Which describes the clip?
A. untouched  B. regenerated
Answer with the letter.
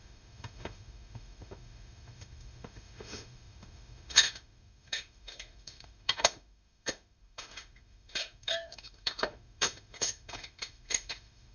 B